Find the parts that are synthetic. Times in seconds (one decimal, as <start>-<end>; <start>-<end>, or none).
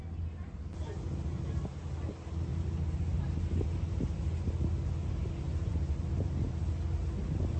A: none